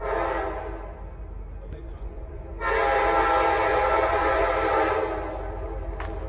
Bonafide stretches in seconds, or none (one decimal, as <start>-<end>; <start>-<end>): 0.0-1.8; 2.4-3.7; 4.4-6.3